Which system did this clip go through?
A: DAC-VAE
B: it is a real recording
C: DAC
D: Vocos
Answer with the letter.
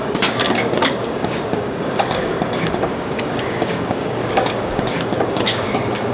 C